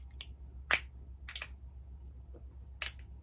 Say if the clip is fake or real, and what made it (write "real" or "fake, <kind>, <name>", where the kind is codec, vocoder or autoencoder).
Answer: real